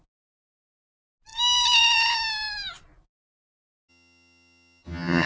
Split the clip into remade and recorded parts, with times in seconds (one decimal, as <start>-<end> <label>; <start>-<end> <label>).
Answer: 0.0-3.9 recorded; 3.9-5.3 remade